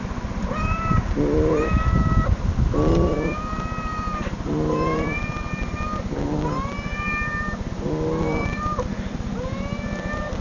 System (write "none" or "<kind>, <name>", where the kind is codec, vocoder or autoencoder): none